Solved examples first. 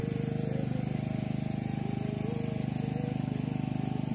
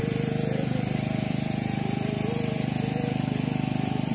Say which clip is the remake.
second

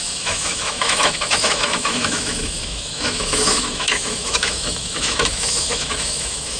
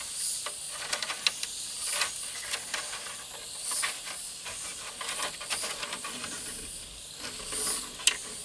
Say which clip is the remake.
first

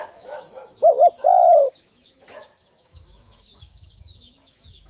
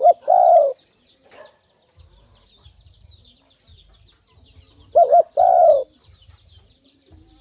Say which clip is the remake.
first